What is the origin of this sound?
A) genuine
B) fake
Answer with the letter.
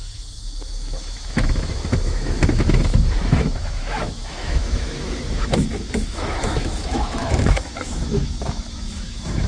B